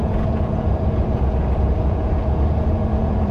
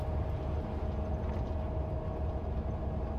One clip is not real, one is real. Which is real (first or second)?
second